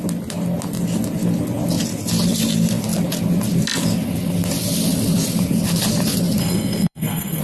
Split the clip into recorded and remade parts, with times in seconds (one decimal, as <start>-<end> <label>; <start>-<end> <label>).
0.0-6.4 recorded; 6.4-7.4 remade